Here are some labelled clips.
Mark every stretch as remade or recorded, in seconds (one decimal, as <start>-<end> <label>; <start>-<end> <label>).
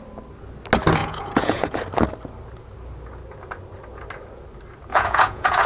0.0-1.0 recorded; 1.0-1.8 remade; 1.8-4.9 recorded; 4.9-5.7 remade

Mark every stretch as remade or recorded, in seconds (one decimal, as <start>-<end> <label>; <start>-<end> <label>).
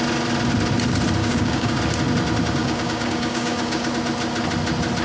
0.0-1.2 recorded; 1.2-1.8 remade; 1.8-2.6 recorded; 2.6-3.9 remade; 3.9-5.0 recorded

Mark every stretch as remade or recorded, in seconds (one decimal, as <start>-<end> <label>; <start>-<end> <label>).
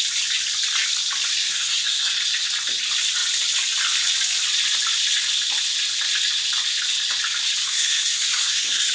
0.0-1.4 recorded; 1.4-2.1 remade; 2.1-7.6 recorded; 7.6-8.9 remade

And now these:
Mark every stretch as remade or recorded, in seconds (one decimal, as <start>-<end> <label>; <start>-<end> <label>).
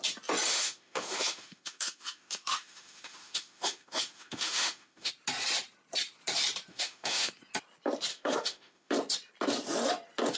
0.0-0.5 recorded; 0.5-5.1 remade; 5.1-6.7 recorded; 6.7-7.3 remade; 7.3-8.1 recorded; 8.1-8.9 remade; 8.9-10.4 recorded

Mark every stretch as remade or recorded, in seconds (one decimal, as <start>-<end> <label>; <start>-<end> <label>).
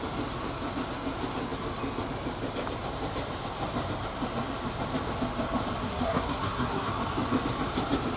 0.0-5.8 recorded; 5.8-6.9 remade; 6.9-8.2 recorded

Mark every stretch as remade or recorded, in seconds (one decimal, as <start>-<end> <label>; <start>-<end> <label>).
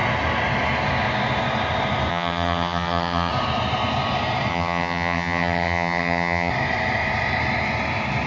0.0-2.1 recorded; 2.1-3.3 remade; 3.3-4.5 recorded; 4.5-6.5 remade; 6.5-8.3 recorded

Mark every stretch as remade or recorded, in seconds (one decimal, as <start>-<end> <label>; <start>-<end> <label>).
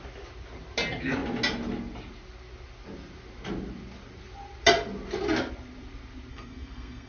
0.0-6.3 recorded; 6.3-7.1 remade